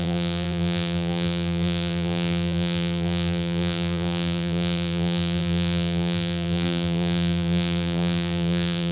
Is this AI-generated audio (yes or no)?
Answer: yes